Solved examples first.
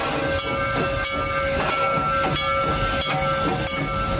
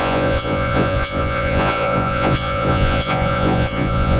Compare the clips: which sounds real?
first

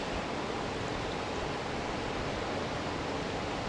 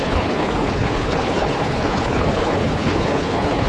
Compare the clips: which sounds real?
first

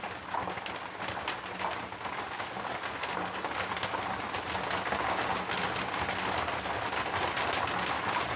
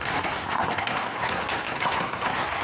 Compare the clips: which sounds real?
first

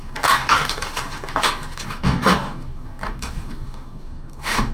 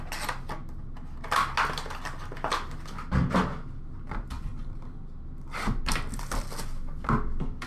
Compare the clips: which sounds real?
second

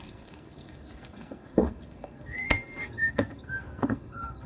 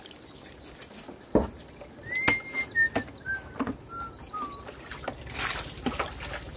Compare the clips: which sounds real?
second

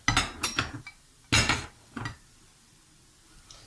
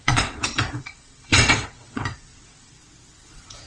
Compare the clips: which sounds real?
first